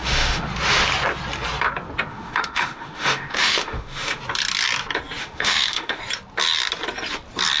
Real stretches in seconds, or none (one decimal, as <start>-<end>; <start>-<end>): 0.5-2.1; 4.2-5.2; 6.0-7.6